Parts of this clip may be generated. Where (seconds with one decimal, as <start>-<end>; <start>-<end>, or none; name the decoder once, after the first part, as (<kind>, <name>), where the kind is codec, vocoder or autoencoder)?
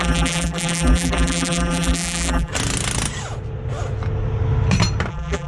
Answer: 0.0-2.5 (vocoder, BigVGAN v2); 5.1-5.5